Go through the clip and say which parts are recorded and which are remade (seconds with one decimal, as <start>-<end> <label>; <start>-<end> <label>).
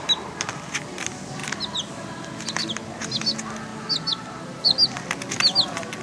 0.0-6.0 recorded